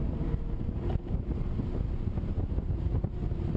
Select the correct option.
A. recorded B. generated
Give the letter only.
A